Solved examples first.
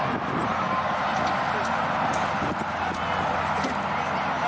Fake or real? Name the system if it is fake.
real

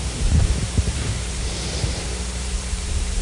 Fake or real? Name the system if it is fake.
fake, vocoder, BigVGAN v2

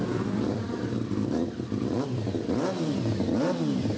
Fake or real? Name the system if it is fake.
fake, vocoder, BigVGAN v2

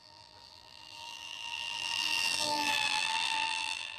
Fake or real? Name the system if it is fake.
fake, vocoder, BigVGAN v2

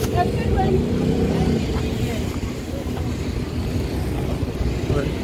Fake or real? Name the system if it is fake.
real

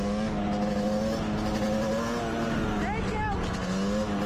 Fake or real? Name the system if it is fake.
real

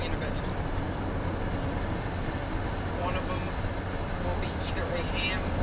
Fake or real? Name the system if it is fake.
real